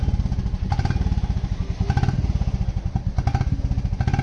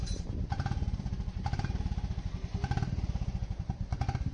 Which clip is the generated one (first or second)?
second